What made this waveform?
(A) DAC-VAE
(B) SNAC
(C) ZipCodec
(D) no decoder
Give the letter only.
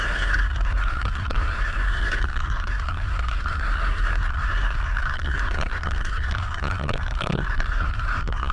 B